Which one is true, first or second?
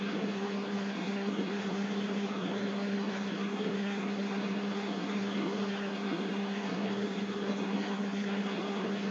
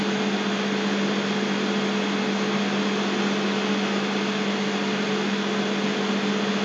second